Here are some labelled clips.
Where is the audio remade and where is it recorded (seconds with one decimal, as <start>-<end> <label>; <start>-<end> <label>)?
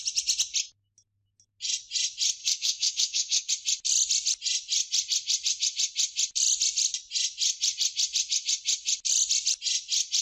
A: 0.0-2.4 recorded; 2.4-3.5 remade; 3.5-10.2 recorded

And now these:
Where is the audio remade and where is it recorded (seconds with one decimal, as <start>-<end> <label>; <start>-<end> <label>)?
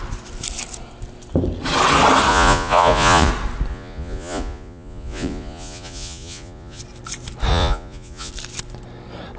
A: 0.0-2.3 recorded; 2.3-3.3 remade; 3.3-3.7 recorded; 3.7-6.8 remade; 6.8-7.5 recorded; 7.5-8.3 remade; 8.3-9.4 recorded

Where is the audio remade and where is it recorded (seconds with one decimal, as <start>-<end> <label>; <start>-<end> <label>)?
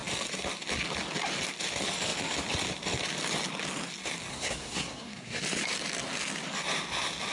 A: 0.0-4.3 recorded; 4.3-5.4 remade; 5.4-7.3 recorded